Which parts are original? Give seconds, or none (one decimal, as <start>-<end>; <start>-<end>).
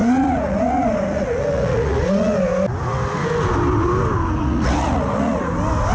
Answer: 2.5-4.4; 5.5-5.9